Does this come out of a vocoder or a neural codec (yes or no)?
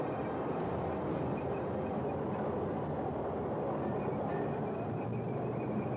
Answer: no